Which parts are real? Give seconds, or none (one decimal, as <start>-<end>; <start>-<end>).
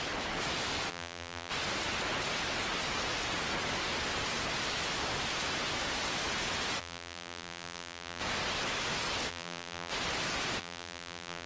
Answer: 0.0-0.9; 1.5-6.8; 8.2-9.3; 9.9-10.6